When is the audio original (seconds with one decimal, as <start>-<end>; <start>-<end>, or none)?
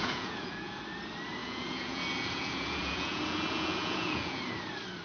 0.8-1.4; 4.4-5.0